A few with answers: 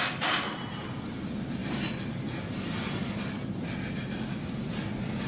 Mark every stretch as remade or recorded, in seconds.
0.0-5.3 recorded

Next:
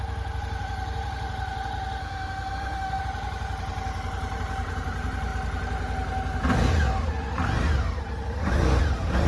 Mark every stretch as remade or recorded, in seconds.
0.0-2.0 recorded; 2.0-3.0 remade; 3.0-9.3 recorded